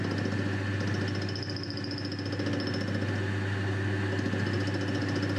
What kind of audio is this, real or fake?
real